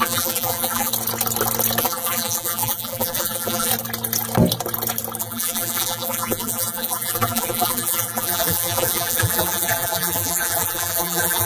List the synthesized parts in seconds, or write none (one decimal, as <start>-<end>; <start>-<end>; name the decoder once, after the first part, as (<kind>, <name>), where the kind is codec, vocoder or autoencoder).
0.0-0.9 (vocoder, BigVGAN v2); 1.8-3.7; 5.2-11.5